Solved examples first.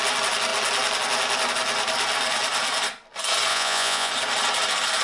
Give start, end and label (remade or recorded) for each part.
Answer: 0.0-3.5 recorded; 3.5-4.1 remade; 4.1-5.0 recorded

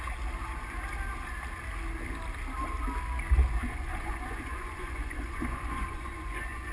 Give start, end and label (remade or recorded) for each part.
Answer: 0.0-3.6 recorded; 3.6-6.7 remade